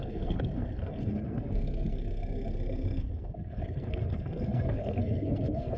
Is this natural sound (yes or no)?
no